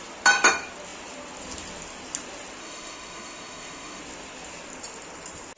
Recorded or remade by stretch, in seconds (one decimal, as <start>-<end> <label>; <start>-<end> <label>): 0.0-2.6 recorded; 2.6-4.0 remade; 4.0-5.6 recorded